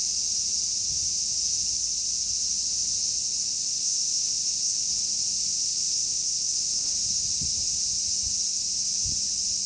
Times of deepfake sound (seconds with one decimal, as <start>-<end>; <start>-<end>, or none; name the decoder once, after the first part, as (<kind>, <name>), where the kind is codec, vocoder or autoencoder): 3.5-4.9 (codec, ZipCodec); 5.5-6.9